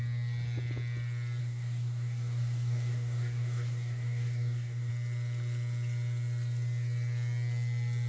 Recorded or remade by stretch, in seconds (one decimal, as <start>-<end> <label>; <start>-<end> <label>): 0.0-1.4 recorded; 1.4-4.9 remade; 4.9-8.1 recorded

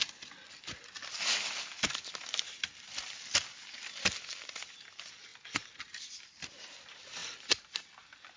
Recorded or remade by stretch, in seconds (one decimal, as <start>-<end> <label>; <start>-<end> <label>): 0.0-8.4 recorded

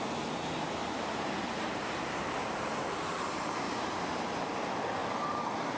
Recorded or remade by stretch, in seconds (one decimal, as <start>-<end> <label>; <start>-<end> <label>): 0.0-0.8 recorded; 0.8-4.2 remade; 4.2-5.0 recorded; 5.0-5.8 remade